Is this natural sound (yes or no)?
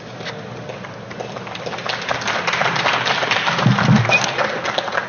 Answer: yes